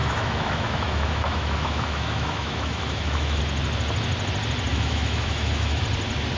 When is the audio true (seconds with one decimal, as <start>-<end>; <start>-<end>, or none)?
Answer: 3.4-4.7; 5.8-6.4